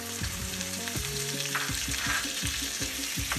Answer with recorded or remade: remade